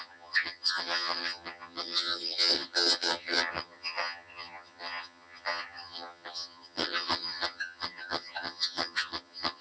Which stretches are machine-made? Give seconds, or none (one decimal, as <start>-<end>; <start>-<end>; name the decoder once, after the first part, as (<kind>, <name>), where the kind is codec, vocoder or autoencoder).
0.0-9.6 (vocoder, HiFi-GAN)